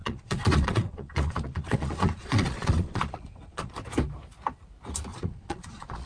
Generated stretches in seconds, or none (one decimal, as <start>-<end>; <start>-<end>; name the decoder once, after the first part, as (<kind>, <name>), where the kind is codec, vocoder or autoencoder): 0.0-3.7 (vocoder, Vocos); 5.1-6.1